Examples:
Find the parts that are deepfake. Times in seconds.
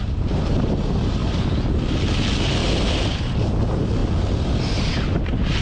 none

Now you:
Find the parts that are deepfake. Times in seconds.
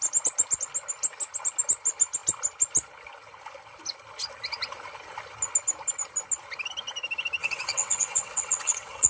7.4-9.1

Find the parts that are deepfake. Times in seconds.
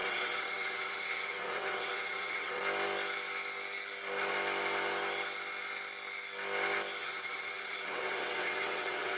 0.0-2.6; 7.0-9.2